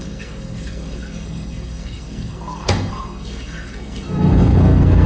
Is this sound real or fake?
fake